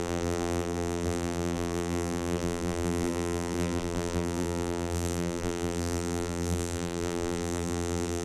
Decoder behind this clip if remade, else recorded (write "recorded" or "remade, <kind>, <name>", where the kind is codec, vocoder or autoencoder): remade, vocoder, BigVGAN v2